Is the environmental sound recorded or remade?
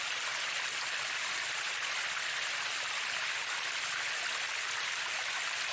recorded